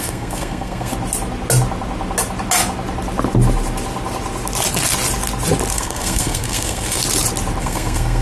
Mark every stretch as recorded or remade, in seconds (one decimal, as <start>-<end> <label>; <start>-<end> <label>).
0.0-0.9 remade; 0.9-5.7 recorded; 5.7-7.0 remade; 7.0-7.6 recorded; 7.6-8.2 remade